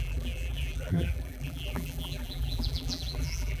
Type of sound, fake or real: fake